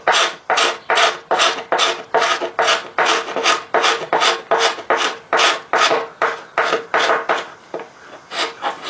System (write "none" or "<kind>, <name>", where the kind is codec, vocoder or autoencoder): none